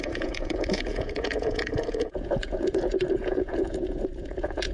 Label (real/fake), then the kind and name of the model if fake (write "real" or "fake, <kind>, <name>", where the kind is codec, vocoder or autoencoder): fake, vocoder, Vocos